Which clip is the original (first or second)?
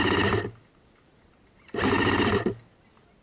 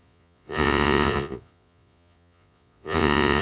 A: first